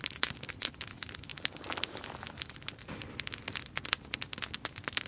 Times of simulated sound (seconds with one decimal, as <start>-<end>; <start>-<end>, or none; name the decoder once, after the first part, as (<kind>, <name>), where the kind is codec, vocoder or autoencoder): none